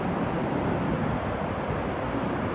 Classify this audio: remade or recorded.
recorded